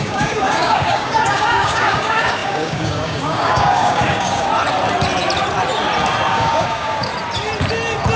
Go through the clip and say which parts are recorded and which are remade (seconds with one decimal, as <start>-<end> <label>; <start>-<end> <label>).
0.0-4.5 remade; 4.5-6.3 recorded; 6.3-7.1 remade; 7.1-8.2 recorded